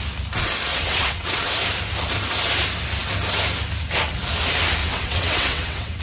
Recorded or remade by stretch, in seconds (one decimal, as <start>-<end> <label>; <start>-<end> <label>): 0.0-0.7 recorded; 0.7-1.5 remade; 1.5-4.8 recorded; 4.8-6.0 remade